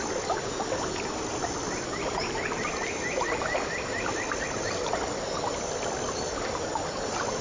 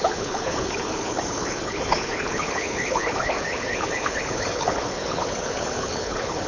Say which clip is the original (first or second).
first